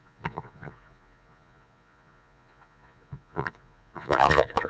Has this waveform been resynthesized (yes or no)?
yes